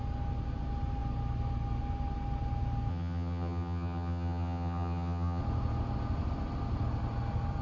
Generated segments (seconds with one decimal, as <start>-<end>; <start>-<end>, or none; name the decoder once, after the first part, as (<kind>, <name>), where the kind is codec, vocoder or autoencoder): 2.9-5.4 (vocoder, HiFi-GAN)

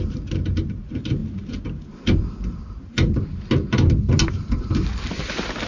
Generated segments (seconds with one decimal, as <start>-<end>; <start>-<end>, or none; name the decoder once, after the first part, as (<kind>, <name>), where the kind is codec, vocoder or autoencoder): none

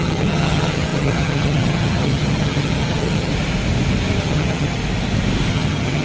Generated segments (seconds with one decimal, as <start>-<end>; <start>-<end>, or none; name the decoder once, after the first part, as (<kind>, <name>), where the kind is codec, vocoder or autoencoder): 0.0-3.3 (vocoder, HiFi-GAN); 4.2-4.8; 5.5-6.0

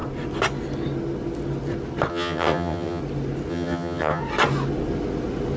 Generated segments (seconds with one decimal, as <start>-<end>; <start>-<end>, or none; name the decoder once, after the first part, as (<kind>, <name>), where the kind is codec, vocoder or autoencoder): 2.1-3.0 (vocoder, HiFi-GAN); 3.5-4.2